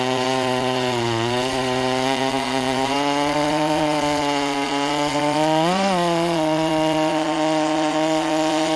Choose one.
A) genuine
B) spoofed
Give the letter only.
B